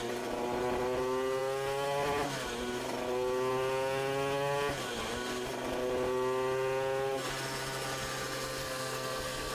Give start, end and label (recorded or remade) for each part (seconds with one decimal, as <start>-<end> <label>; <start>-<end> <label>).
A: 0.0-8.6 recorded; 8.6-9.5 remade